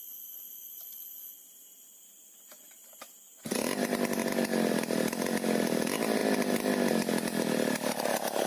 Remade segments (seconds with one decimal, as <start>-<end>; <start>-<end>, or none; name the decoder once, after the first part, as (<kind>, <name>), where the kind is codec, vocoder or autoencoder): none